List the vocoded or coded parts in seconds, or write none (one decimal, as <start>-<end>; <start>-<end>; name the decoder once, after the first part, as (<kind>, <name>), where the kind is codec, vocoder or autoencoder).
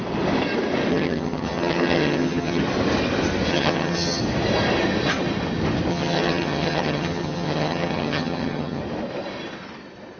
0.9-2.6 (vocoder, HiFi-GAN); 3.5-4.2; 5.9-8.8